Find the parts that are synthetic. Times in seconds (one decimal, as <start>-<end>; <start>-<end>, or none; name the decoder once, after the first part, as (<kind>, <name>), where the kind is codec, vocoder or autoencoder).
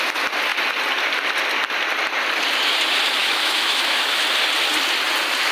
3.2-4.2 (autoencoder, DAC-VAE)